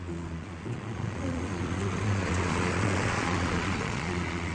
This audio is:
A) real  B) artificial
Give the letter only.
B